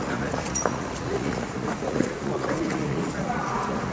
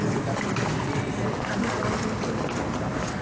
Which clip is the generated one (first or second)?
first